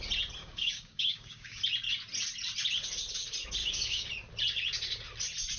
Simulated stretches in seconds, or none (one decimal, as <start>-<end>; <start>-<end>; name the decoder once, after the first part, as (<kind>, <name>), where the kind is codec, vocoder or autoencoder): 0.4-1.6 (codec, DAC); 3.6-4.1

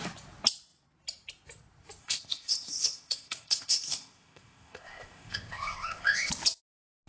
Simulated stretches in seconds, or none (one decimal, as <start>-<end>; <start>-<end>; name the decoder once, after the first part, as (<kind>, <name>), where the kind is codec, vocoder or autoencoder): 2.0-6.3 (codec, ZipCodec)

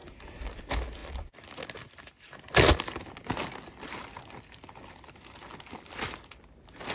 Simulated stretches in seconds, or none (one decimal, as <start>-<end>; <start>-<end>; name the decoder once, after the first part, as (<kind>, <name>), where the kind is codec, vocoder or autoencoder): 0.0-0.6 (vocoder, BigVGAN v2)

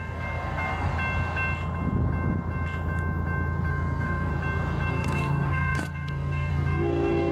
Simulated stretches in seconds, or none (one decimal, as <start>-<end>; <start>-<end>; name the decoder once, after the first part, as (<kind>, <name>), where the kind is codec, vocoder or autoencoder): 0.0-0.9 (codec, SNAC); 3.7-4.3; 4.9-7.3

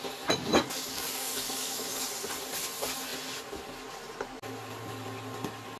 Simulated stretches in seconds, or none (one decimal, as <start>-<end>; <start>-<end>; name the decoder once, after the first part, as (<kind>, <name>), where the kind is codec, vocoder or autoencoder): 0.5-2.0 (codec, DAC)